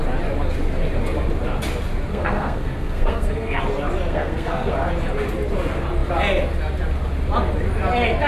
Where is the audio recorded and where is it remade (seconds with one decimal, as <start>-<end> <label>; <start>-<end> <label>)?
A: 0.0-2.1 recorded; 2.1-3.6 remade; 3.6-4.1 recorded; 4.1-4.7 remade; 4.7-8.3 recorded